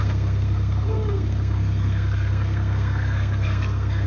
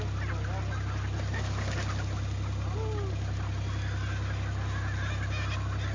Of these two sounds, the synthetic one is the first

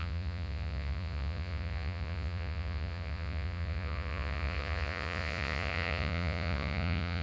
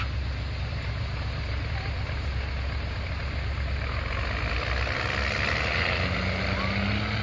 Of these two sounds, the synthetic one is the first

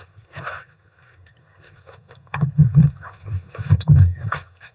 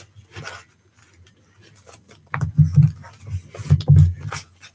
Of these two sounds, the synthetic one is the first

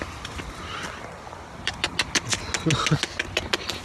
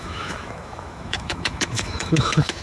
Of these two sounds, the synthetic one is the second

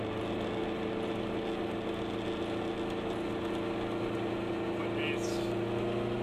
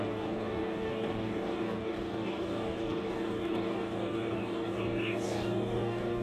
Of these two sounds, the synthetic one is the second